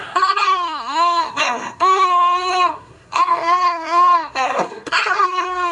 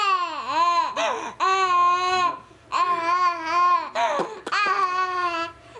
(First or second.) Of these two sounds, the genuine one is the second